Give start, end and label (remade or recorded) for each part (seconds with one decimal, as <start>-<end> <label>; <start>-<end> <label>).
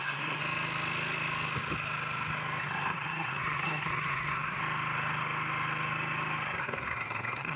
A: 0.0-0.4 remade; 0.4-2.6 recorded; 2.6-4.6 remade; 4.6-6.6 recorded; 6.6-7.6 remade